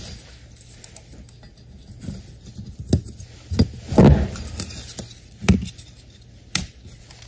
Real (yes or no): yes